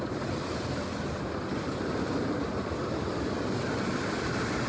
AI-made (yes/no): no